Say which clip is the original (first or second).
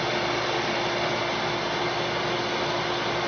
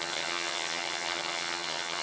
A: first